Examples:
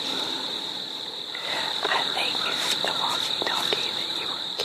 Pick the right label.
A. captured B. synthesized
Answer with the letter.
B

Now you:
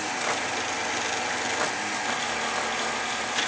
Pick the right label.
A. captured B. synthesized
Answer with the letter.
A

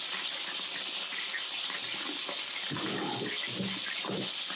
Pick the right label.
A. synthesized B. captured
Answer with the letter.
B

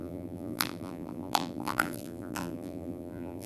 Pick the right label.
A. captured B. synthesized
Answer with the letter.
B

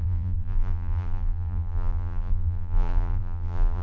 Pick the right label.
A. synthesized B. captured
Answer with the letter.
A